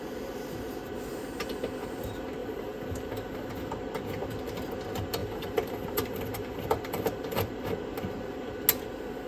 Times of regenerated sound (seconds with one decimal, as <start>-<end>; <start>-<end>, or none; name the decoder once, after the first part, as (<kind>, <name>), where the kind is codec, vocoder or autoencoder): 2.4-3.5 (vocoder, BigVGAN v2); 5.2-7.5